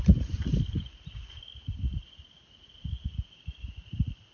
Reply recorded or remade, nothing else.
recorded